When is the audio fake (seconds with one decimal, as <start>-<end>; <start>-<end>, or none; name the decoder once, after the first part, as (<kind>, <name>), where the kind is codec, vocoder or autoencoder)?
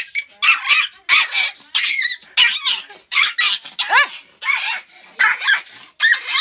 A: none